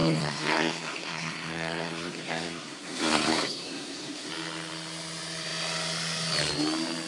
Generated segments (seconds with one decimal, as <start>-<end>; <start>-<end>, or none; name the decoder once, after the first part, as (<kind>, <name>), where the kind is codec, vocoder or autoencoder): 0.0-4.3 (codec, SNAC)